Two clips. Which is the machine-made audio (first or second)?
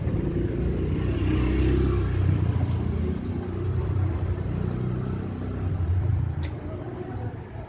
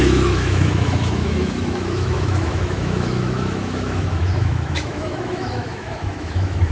second